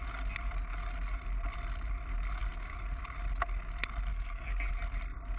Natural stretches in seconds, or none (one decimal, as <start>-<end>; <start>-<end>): 0.0-4.1; 4.7-5.4